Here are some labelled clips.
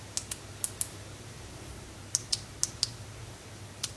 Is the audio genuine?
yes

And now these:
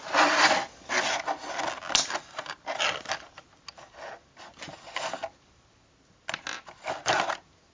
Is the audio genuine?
yes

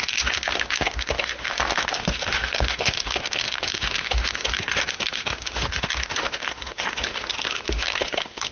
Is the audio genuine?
no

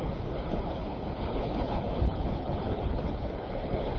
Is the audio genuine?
no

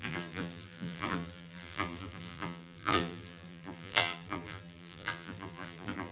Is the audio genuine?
no